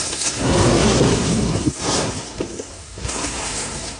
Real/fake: fake